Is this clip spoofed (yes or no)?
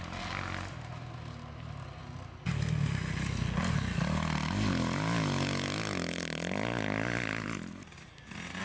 no